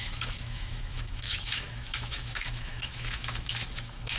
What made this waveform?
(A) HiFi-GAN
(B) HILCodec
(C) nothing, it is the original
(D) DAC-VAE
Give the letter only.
D